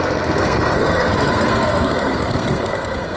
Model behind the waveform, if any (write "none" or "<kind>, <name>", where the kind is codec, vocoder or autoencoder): codec, SNAC